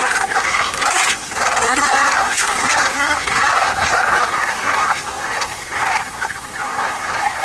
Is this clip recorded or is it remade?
remade